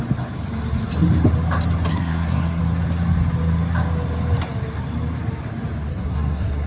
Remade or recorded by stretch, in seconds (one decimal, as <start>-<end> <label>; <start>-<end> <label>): 0.0-1.9 recorded; 1.9-2.6 remade; 2.6-5.9 recorded; 5.9-6.7 remade